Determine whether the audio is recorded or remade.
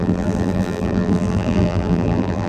remade